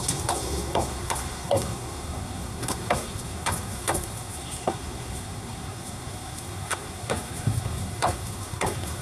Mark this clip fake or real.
fake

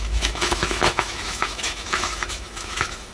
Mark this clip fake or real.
fake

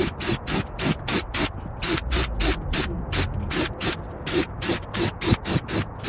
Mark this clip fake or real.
real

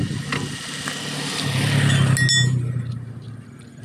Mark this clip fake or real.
real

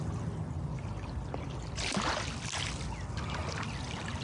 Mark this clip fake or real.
real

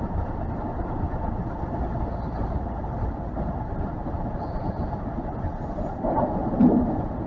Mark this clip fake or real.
real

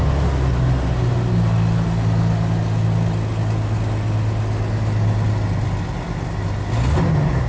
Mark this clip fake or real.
real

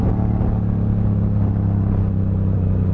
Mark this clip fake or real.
real